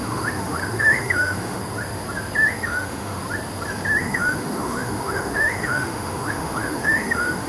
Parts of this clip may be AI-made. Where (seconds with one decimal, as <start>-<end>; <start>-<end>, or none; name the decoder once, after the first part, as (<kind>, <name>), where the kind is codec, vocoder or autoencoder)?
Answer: 0.0-1.6 (autoencoder, DAC-VAE); 2.5-3.2; 4.0-7.5